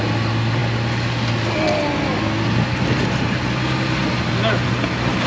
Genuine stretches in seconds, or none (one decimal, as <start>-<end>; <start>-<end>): 0.0-5.3